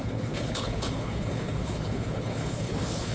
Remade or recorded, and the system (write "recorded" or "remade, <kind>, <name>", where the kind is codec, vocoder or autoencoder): remade, codec, HILCodec